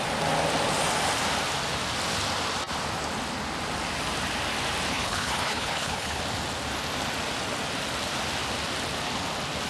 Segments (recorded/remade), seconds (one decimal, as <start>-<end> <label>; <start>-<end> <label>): 0.0-4.9 recorded; 4.9-6.2 remade; 6.2-9.7 recorded